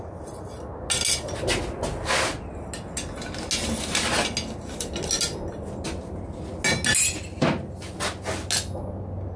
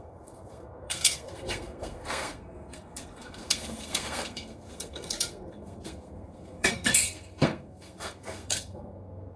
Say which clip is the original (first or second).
first